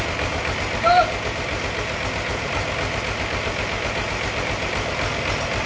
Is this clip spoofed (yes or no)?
no